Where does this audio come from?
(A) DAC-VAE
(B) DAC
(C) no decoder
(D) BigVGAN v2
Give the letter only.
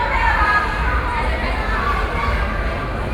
C